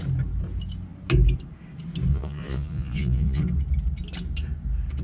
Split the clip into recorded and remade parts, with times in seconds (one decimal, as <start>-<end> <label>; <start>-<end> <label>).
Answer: 0.0-2.1 recorded; 2.1-3.4 remade; 3.4-5.0 recorded